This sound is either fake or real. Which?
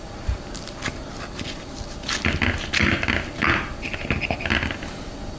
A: real